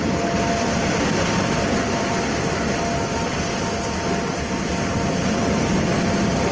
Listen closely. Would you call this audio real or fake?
real